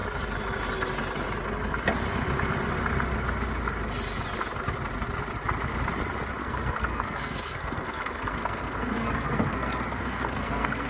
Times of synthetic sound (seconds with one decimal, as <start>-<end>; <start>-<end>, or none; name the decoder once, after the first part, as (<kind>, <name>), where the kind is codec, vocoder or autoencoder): 6.4-10.9 (codec, SNAC)